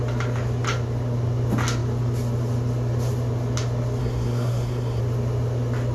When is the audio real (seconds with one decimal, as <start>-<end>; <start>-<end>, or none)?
0.0-4.0; 5.0-5.9